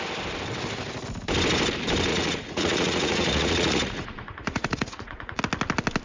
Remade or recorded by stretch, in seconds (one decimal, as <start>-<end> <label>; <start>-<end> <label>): 0.0-2.1 recorded; 2.1-5.4 remade; 5.4-6.0 recorded